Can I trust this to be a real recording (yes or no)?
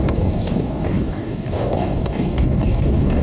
no